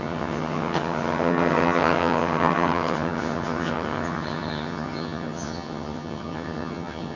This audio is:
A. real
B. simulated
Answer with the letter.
B